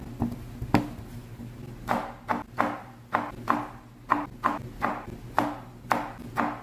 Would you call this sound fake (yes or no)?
no